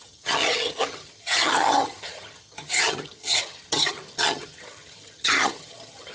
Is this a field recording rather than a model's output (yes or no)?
no